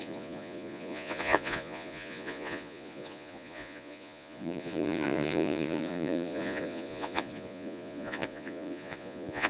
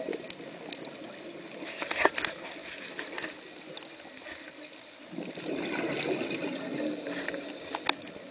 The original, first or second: second